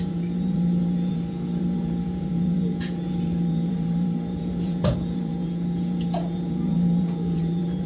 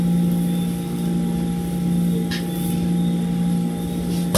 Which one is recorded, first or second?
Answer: second